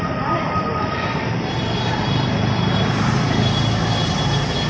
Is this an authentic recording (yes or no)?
no